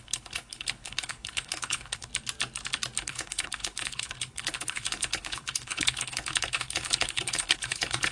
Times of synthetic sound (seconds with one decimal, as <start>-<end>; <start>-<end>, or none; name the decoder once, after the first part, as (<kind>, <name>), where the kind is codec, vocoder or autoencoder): 0.0-2.1 (codec, HILCodec); 3.0-8.1